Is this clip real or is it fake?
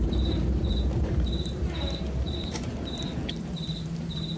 fake